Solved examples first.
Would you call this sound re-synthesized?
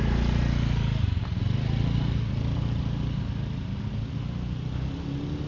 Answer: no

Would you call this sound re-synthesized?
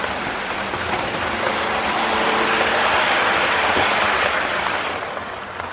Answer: no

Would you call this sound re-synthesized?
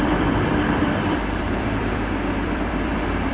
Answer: yes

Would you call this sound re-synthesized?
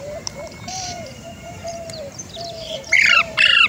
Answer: yes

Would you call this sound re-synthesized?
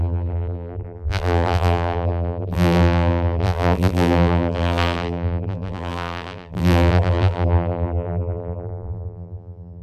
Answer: yes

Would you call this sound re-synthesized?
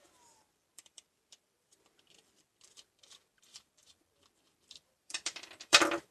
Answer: yes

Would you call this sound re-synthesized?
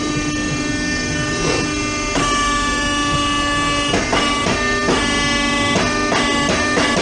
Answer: no